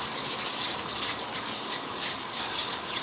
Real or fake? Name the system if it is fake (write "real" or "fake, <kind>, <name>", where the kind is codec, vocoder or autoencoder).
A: fake, codec, DAC